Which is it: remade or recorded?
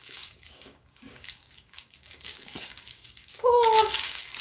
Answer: remade